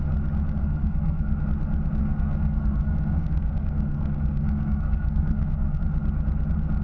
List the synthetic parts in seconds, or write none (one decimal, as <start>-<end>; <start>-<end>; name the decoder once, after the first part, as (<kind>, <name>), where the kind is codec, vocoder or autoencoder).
0.6-1.4 (codec, SNAC); 2.0-5.8